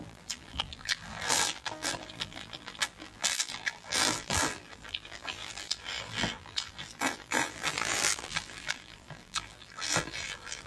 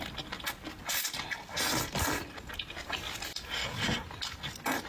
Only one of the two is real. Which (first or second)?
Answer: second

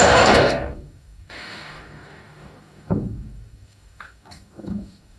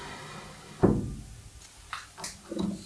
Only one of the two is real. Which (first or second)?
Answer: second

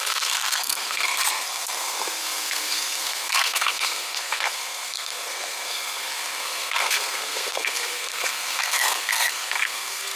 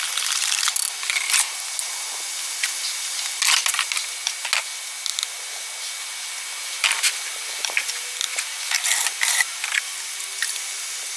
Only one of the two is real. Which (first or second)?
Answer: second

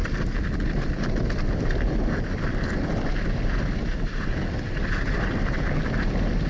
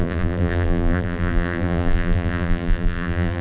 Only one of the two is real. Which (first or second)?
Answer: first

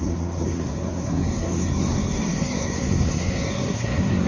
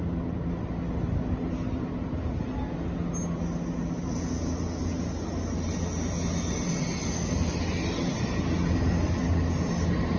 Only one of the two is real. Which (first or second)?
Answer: second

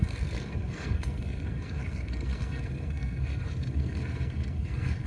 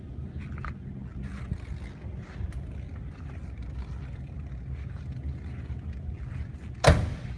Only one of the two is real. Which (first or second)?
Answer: second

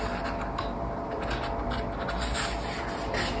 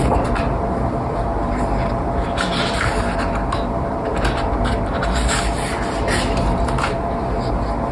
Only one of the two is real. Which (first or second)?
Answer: first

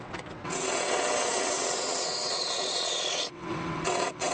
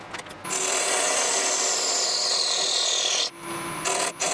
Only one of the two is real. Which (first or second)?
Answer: second